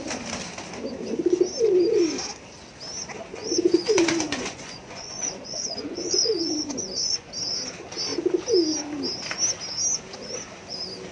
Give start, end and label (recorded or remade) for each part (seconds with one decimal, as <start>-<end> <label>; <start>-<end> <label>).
0.0-3.3 recorded; 3.3-7.3 remade; 7.3-11.1 recorded